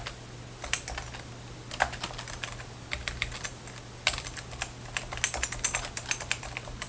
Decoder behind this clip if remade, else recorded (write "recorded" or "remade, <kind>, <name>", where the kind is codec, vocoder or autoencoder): recorded